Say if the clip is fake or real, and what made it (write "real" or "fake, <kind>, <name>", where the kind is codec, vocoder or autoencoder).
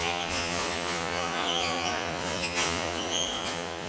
fake, vocoder, Vocos